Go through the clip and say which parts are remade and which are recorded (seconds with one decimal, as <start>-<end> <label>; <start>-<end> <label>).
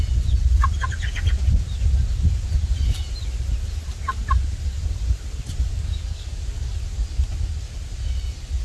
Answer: 0.0-5.7 recorded; 5.7-6.7 remade; 6.7-8.6 recorded